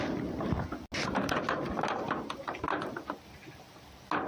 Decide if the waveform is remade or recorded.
recorded